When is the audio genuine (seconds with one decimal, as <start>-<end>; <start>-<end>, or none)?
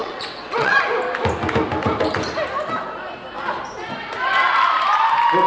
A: 0.8-5.5